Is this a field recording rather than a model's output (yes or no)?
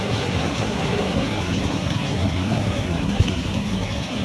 no